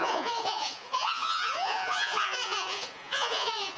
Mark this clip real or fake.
fake